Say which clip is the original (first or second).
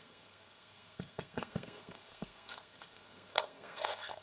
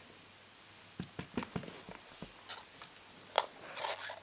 second